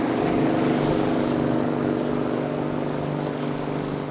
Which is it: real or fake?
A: fake